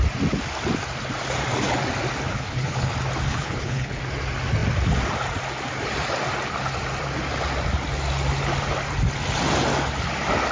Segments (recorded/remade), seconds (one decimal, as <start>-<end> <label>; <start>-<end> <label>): 0.0-2.3 recorded; 2.3-2.9 remade; 2.9-3.3 recorded; 3.3-4.0 remade; 4.0-10.5 recorded